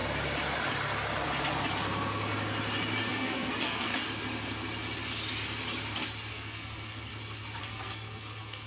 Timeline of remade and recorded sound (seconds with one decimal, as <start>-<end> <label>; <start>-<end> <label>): 0.0-3.1 recorded; 3.1-3.9 remade; 3.9-6.3 recorded; 6.3-7.1 remade; 7.1-7.6 recorded; 7.6-8.7 remade